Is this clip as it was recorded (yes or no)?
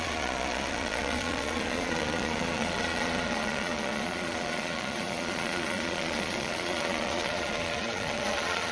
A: no